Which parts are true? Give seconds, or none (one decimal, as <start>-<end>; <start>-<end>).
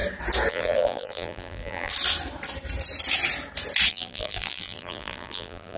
0.0-0.5; 1.9-3.9